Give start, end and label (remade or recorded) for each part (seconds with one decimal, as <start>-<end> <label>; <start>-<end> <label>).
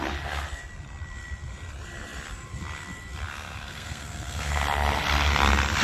0.0-3.3 recorded; 3.3-4.5 remade; 4.5-5.8 recorded